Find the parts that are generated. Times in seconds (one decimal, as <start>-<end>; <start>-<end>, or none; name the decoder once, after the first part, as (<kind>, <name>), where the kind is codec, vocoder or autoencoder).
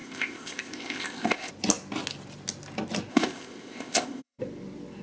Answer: 0.0-1.5 (codec, ZipCodec); 3.1-4.4